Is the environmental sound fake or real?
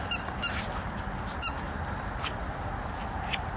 real